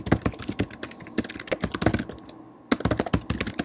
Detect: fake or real real